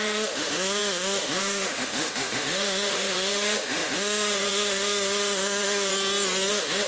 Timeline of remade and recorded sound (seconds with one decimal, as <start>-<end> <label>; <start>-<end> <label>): 0.0-5.9 remade; 5.9-6.5 recorded; 6.5-6.9 remade